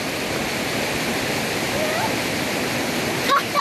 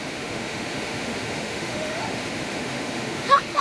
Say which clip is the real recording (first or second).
first